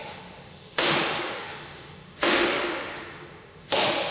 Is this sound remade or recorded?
remade